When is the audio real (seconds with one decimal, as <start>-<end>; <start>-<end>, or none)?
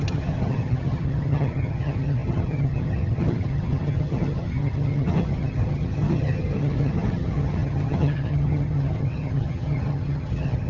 none